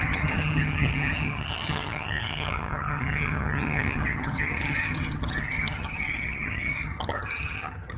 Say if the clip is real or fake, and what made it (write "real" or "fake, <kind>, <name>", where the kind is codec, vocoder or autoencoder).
fake, vocoder, HiFi-GAN